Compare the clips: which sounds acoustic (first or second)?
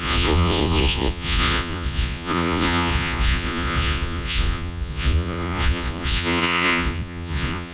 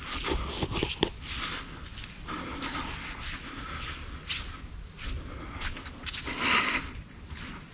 second